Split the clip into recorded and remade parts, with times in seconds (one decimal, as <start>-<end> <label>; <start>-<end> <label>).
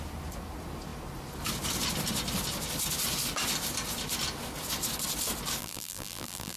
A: 0.0-5.6 recorded; 5.6-6.6 remade